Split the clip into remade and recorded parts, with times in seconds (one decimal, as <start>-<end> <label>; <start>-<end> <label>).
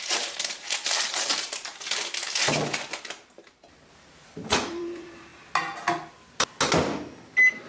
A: 0.0-1.7 remade; 1.7-2.5 recorded; 2.5-5.3 remade; 5.3-7.7 recorded